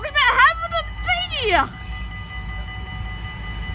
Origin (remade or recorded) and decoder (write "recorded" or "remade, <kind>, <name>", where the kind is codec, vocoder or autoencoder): recorded